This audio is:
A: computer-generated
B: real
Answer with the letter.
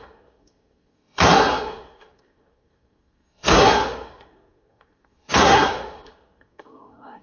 A